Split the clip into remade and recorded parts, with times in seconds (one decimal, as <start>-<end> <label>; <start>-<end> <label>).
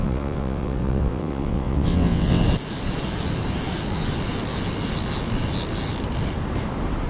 0.0-2.4 remade; 2.4-7.1 recorded